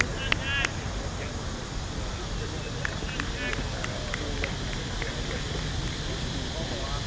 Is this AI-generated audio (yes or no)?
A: no